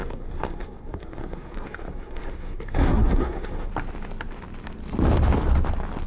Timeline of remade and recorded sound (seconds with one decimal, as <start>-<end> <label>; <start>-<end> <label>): 0.0-3.7 remade; 3.7-6.1 recorded